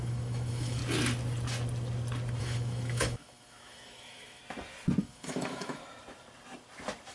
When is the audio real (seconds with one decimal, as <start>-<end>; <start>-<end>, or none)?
0.8-2.4; 4.4-5.0; 5.8-7.1